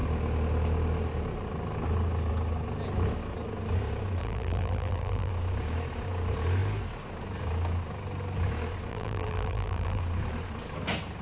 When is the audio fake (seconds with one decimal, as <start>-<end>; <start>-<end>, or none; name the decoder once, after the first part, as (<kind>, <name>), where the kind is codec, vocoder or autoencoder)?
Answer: 4.2-5.3 (vocoder, BigVGAN v2); 8.9-10.0

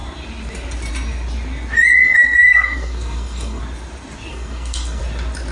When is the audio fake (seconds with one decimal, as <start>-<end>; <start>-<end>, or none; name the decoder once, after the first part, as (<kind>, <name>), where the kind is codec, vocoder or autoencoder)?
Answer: 2.0-3.6 (codec, SNAC); 4.3-5.0

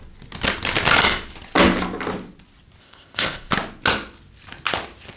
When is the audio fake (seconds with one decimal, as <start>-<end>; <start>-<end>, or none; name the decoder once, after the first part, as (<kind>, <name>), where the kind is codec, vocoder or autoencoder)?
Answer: 2.8-3.5 (codec, ZipCodec)

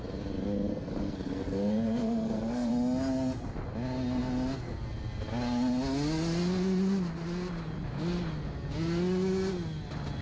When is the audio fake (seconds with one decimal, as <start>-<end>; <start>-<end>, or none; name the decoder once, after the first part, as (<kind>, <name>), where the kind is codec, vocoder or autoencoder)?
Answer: 0.7-2.7 (codec, SNAC)